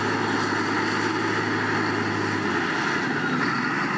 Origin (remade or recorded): recorded